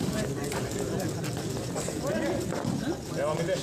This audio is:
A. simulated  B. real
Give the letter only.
B